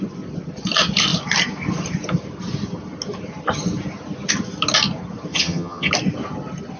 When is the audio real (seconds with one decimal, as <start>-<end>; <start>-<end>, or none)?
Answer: 0.0-5.3; 5.9-6.8